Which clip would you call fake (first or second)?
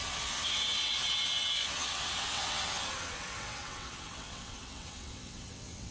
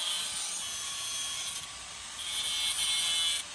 first